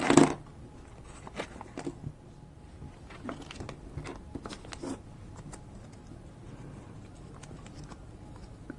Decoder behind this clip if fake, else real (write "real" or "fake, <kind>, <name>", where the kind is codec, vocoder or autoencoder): real